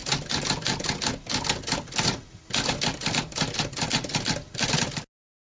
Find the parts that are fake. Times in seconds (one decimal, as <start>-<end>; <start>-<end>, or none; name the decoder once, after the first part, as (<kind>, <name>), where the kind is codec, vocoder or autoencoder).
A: none